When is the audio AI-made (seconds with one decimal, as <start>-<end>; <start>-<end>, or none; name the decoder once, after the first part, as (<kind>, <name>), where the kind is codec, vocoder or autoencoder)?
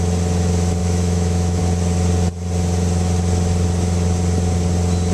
0.8-1.6 (autoencoder, DAC-VAE)